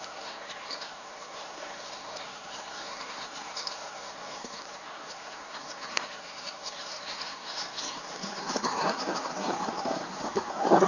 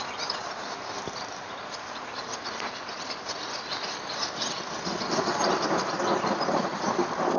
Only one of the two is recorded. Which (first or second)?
second